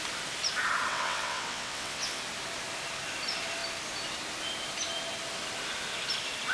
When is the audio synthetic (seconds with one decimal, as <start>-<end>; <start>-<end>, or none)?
0.9-2.2